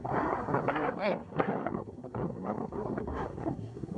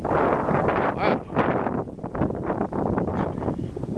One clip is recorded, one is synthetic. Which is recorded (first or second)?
second